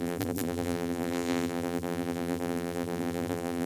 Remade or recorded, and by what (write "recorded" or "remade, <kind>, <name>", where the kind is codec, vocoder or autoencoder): remade, vocoder, BigVGAN v2